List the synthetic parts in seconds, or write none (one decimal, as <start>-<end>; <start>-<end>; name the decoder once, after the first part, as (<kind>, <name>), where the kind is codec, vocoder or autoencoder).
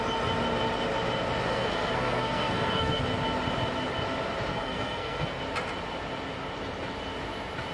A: 1.5-3.0 (codec, SNAC); 4.5-5.4